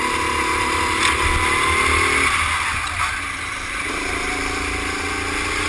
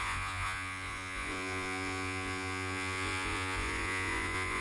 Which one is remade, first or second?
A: second